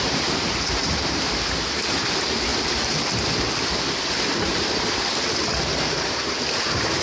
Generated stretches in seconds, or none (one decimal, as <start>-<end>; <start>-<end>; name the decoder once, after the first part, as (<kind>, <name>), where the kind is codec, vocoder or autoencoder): 0.0-2.5 (vocoder, BigVGAN v2); 4.1-7.0